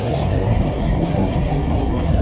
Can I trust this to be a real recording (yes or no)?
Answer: no